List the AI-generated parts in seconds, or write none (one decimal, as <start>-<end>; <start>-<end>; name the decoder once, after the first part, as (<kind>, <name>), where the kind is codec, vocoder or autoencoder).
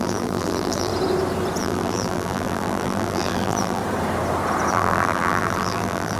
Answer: 0.0-0.9 (vocoder, BigVGAN v2); 1.6-3.8; 4.7-6.2